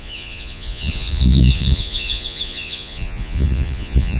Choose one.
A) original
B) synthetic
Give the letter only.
B